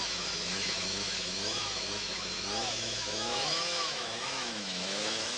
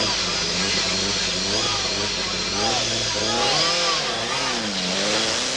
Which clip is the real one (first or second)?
second